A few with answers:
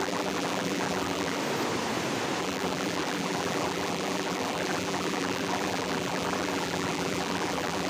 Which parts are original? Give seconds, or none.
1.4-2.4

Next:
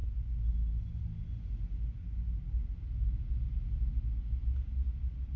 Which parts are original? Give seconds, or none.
0.0-5.4